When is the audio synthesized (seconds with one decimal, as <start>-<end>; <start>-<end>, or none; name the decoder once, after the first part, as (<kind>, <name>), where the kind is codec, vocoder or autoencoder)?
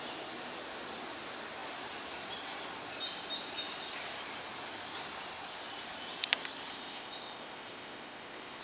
6.7-8.6 (codec, ZipCodec)